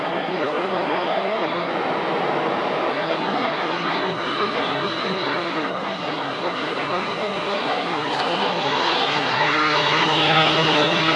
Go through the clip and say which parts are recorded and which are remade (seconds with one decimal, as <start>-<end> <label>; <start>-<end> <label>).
0.0-1.7 remade; 1.7-2.9 recorded; 2.9-11.2 remade